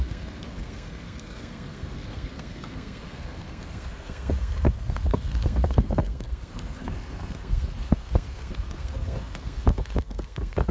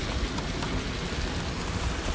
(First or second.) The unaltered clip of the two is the second